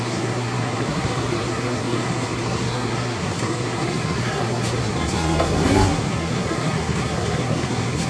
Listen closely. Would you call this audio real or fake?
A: fake